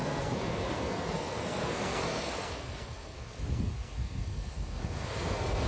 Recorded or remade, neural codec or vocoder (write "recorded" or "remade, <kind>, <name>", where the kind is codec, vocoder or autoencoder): remade, codec, SNAC